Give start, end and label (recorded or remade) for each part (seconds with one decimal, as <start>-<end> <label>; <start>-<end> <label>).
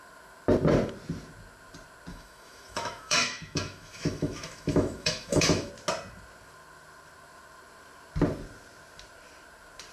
0.0-2.1 recorded; 2.1-5.7 remade; 5.7-9.9 recorded